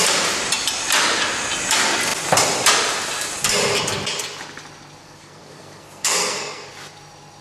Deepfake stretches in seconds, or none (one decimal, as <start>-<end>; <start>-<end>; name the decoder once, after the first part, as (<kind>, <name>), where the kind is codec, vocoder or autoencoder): 5.0-6.7 (codec, SNAC)